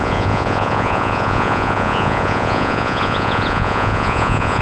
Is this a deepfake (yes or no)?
yes